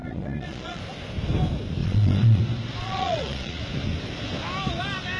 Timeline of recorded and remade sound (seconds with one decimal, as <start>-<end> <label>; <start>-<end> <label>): 0.0-0.8 remade; 0.8-1.8 recorded; 1.8-2.4 remade; 2.4-2.8 recorded; 2.8-3.6 remade; 3.6-5.2 recorded